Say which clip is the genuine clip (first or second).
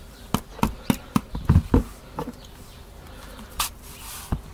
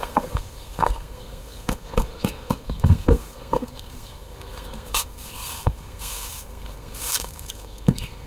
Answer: first